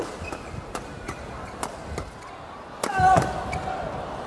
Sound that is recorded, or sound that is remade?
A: recorded